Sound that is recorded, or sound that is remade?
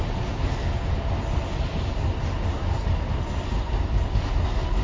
recorded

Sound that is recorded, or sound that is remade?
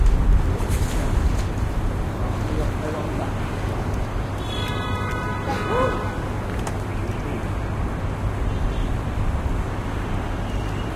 recorded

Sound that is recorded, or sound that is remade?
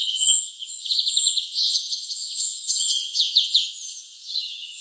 remade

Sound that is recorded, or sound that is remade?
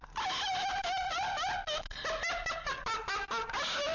recorded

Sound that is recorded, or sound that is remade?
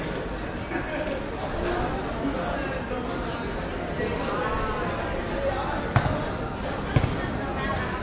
recorded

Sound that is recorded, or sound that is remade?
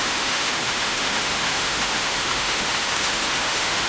remade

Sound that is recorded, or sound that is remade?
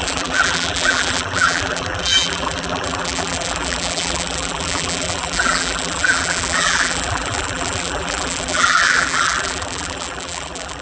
remade